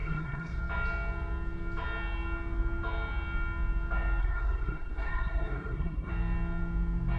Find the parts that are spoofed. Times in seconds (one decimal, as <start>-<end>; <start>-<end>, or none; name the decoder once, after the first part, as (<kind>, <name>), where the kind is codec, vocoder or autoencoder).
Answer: 0.0-0.6 (codec, SNAC); 4.2-6.1

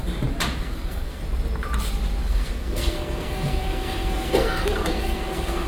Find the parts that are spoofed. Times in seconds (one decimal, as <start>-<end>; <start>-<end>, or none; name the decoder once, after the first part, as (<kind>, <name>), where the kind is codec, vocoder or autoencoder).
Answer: 0.6-1.2 (codec, SNAC); 2.2-5.7

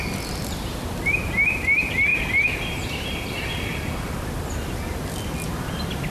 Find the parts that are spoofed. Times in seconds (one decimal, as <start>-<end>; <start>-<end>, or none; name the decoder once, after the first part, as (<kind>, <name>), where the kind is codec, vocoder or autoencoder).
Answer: none

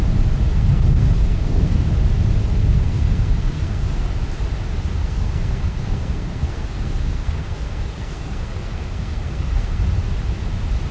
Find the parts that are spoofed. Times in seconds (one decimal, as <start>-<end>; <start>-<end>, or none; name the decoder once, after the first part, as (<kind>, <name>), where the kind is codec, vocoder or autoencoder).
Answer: 0.5-1.9 (codec, SNAC); 2.4-4.1; 5.0-9.8

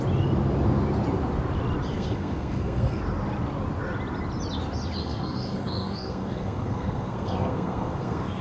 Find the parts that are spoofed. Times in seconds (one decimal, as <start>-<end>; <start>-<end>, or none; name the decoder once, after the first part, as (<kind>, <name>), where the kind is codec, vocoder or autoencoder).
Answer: 1.9-3.0 (codec, SNAC); 5.0-8.4

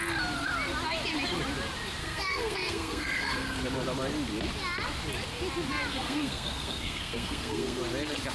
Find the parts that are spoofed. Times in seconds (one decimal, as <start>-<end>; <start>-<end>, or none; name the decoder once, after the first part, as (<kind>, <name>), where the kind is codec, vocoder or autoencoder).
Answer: 2.0-3.6 (codec, SNAC); 5.9-7.8

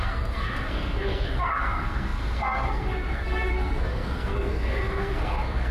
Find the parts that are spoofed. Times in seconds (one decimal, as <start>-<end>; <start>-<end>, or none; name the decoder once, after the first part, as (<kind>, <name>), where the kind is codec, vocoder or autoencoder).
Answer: 0.0-5.7 (codec, SNAC)

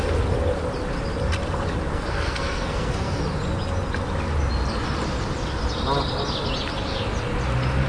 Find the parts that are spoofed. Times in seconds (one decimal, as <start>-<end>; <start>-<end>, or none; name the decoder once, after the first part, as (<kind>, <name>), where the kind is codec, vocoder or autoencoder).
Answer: 1.9-3.2 (codec, SNAC)